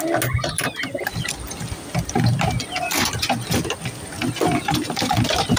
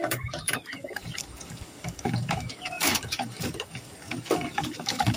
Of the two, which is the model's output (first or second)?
second